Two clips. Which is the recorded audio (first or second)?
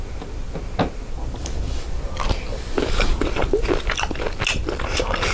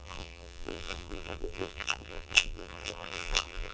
first